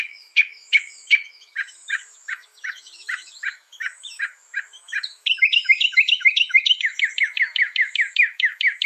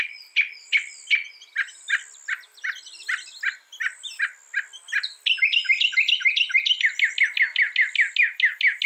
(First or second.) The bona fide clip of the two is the second